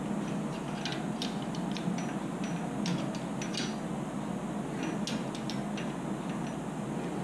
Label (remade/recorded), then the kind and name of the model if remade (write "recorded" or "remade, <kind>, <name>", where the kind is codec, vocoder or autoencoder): recorded